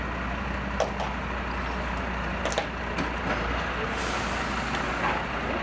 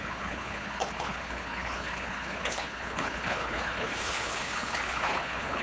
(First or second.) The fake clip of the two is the second